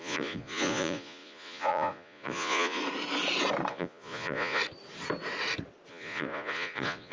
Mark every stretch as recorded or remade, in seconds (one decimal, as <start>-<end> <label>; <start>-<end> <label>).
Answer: 0.0-2.8 remade; 2.8-3.7 recorded; 3.7-4.6 remade; 4.6-5.9 recorded; 5.9-7.1 remade